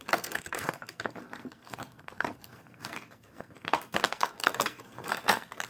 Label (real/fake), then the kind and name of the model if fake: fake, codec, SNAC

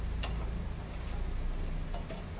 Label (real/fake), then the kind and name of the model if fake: real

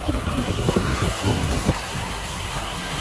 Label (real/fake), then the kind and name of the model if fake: fake, codec, SNAC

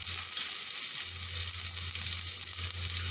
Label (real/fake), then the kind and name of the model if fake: real